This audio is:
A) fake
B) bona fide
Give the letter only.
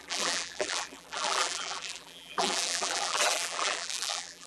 A